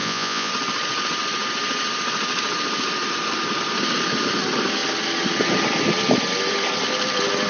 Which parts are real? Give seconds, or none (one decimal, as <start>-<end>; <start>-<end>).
0.5-7.5